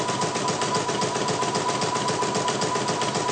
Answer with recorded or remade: recorded